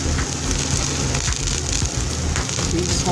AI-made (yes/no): no